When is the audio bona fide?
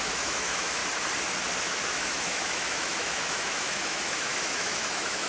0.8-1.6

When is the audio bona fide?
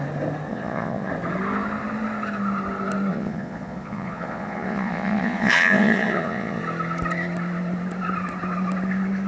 0.0-0.5; 1.1-3.1; 6.6-9.3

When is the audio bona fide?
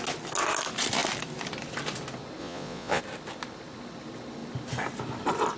0.0-2.4; 3.0-5.6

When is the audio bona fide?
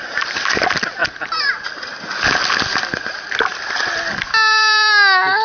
0.0-5.4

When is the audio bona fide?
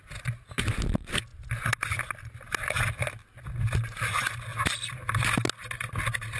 0.0-6.4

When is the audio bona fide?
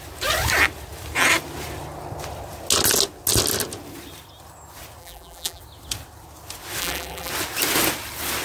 0.0-5.0; 5.6-6.8; 7.3-8.4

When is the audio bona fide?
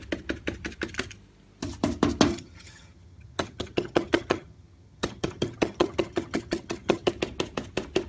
0.0-2.3; 7.1-8.1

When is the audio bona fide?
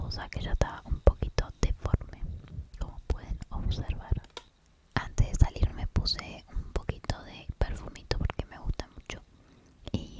0.0-10.2